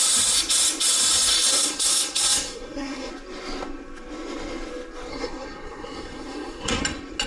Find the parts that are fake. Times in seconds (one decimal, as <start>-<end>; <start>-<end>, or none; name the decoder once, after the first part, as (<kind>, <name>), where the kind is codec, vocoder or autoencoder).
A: 1.5-3.1 (codec, SNAC); 5.1-6.8